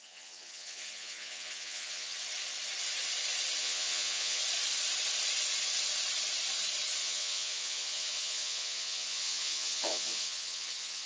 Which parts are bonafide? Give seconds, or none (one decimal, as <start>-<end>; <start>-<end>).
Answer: 2.1-3.6; 4.4-7.0